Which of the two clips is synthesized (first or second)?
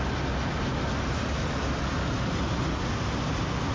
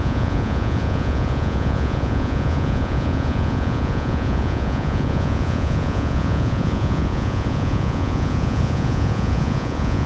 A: second